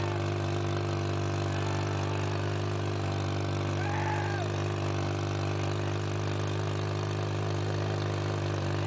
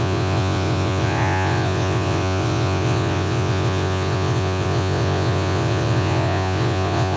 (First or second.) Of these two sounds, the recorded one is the first